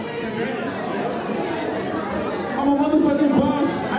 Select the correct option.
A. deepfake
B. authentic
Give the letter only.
B